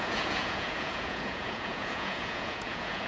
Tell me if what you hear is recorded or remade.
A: remade